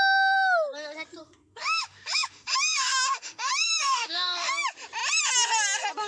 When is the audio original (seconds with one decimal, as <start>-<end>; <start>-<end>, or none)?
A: 0.0-1.2; 4.5-6.1